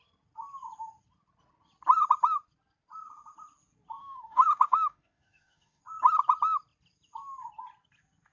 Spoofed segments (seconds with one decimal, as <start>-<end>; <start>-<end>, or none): 4.0-5.8